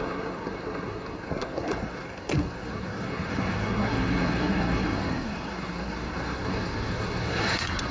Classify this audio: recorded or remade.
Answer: remade